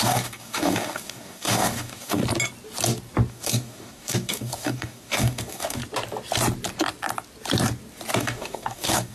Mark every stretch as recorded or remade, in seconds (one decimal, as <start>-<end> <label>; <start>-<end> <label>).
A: 0.0-2.2 remade; 2.2-3.3 recorded; 3.3-5.8 remade; 5.8-8.2 recorded; 8.2-9.1 remade